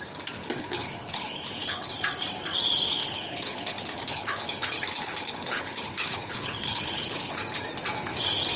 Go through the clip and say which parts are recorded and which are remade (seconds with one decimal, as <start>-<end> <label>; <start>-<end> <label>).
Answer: 0.0-0.4 recorded; 0.4-1.9 remade; 1.9-3.0 recorded; 3.0-7.3 remade; 7.3-8.6 recorded